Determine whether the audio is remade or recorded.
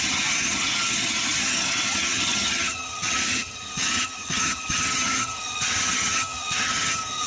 remade